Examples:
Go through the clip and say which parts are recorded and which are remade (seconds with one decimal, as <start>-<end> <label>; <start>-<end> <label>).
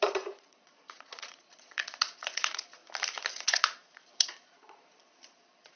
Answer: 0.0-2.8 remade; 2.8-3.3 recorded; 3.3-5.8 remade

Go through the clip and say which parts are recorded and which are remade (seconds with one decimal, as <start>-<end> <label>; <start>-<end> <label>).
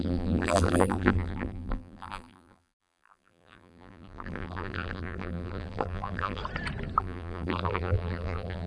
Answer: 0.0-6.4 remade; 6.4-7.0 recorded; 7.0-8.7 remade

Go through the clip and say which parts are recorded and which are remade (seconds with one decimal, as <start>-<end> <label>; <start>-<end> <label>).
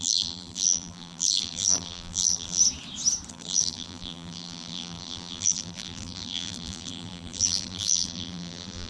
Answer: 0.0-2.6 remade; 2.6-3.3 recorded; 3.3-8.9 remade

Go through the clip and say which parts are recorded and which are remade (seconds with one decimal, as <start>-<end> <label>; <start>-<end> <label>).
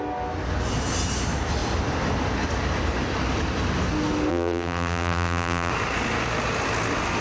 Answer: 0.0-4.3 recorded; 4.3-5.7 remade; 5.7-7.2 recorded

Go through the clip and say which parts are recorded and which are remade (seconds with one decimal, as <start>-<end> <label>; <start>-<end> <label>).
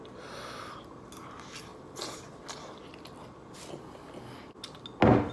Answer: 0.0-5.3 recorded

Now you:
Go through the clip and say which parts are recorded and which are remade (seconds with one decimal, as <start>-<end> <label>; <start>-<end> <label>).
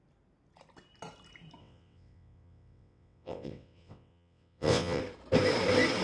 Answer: 0.0-1.6 recorded; 1.6-5.0 remade; 5.0-6.0 recorded